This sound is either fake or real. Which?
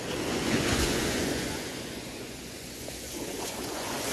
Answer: fake